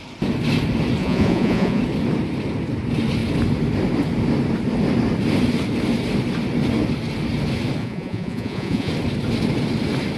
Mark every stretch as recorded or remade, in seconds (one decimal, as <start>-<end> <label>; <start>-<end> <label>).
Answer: 0.0-1.0 recorded; 1.0-1.8 remade; 1.8-7.8 recorded; 7.8-8.9 remade; 8.9-10.2 recorded